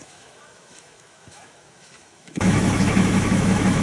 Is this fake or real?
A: fake